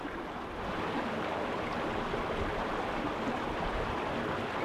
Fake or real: real